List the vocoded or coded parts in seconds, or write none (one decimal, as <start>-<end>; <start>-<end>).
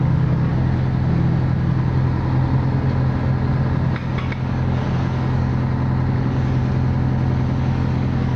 0.0-0.5; 4.5-5.5; 6.1-6.6; 7.6-8.4